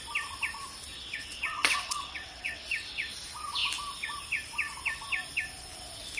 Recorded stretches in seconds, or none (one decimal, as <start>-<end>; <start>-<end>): 0.0-0.9; 3.1-6.2